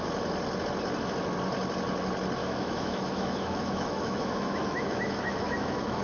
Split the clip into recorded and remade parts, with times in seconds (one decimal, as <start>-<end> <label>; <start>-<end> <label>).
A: 0.0-2.4 recorded; 2.4-6.0 remade